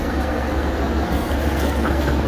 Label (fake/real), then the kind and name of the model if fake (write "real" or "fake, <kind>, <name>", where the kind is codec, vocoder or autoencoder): fake, codec, SNAC